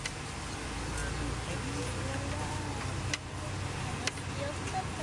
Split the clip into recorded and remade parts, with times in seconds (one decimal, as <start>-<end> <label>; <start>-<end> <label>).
0.0-5.0 recorded